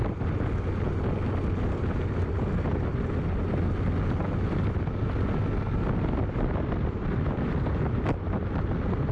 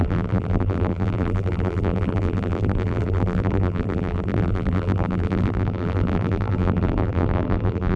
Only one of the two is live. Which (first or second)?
first